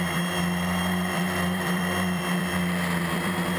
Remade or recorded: remade